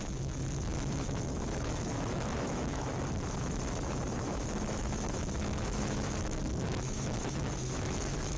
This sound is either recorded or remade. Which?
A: remade